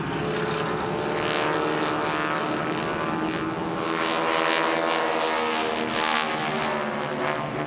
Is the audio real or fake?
real